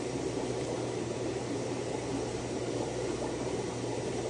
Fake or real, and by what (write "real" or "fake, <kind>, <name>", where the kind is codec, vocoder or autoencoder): fake, vocoder, BigVGAN v2